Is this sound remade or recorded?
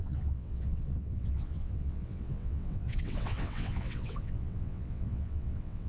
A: remade